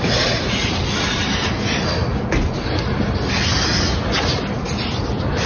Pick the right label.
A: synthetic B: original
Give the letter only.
B